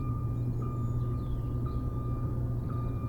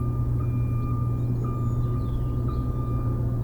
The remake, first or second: first